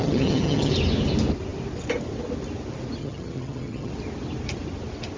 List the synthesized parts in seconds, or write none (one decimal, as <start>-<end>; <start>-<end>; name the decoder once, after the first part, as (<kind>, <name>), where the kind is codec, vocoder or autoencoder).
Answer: 0.0-0.7 (vocoder, HiFi-GAN); 3.0-3.9